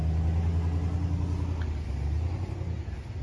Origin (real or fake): real